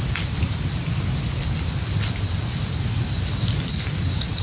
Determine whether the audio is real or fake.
real